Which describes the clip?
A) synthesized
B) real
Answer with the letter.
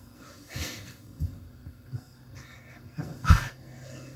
A